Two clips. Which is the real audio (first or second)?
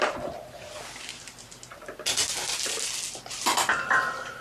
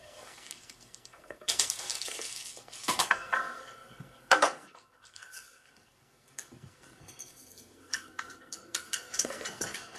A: first